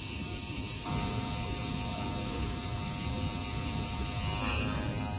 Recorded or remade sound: recorded